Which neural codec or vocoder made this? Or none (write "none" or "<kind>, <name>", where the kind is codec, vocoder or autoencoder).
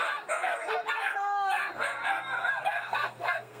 codec, SNAC